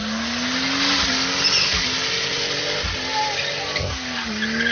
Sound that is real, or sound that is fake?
real